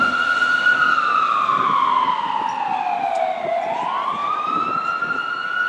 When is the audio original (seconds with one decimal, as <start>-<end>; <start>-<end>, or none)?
0.0-4.2; 4.7-5.7